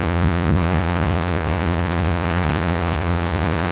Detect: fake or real fake